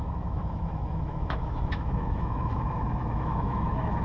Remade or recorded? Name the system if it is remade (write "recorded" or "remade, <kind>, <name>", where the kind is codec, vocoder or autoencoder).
remade, autoencoder, DAC-VAE